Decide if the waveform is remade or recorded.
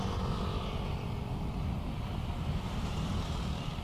recorded